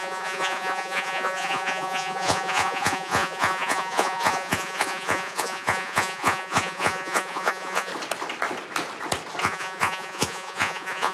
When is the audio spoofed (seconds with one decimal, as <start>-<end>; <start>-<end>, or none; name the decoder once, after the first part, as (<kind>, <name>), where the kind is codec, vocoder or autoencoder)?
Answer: 0.0-7.9 (vocoder, Vocos); 9.4-11.1